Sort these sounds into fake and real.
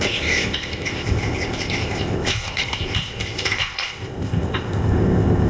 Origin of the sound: fake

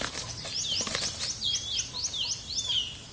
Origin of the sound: real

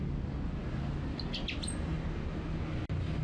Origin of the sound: real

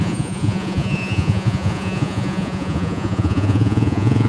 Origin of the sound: fake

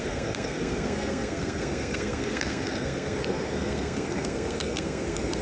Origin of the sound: fake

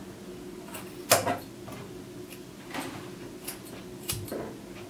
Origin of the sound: real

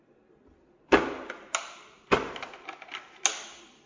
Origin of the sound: real